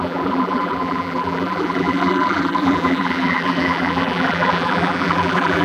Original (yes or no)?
no